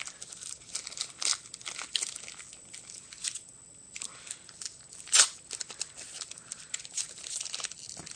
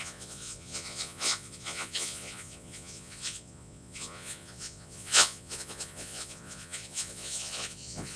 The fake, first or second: second